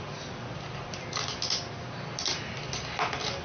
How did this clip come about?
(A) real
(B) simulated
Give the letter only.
A